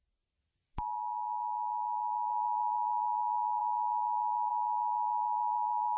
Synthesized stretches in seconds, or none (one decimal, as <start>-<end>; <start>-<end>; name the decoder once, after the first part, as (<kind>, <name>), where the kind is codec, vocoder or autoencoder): 4.5-6.0 (autoencoder, DAC-VAE)